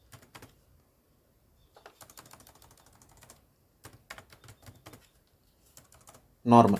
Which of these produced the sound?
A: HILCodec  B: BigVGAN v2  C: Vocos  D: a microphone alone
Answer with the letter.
D